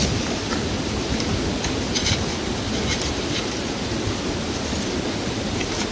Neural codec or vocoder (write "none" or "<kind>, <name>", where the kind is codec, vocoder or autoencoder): none